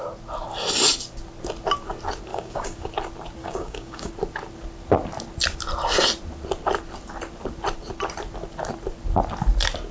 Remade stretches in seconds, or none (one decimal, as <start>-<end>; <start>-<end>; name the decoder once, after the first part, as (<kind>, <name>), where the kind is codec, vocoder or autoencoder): 2.3-2.9 (codec, DAC); 3.4-4.1